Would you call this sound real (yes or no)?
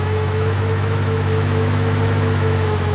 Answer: no